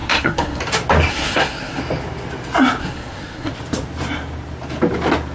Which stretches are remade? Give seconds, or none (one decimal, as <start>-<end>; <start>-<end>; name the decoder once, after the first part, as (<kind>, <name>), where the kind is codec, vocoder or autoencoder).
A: 0.0-0.6 (codec, SNAC); 1.1-1.8; 2.8-3.5